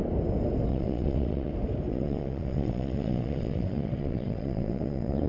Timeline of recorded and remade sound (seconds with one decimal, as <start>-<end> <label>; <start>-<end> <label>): 0.0-0.7 recorded; 0.7-1.5 remade; 1.5-1.9 recorded; 1.9-5.3 remade